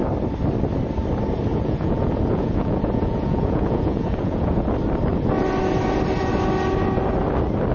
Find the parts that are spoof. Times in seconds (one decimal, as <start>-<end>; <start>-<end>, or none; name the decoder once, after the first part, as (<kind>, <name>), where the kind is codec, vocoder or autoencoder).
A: 1.5-4.7 (vocoder, Vocos)